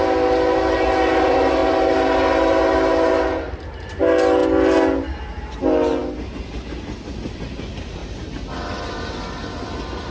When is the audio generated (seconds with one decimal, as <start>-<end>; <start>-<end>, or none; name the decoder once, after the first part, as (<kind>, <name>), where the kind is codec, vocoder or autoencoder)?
none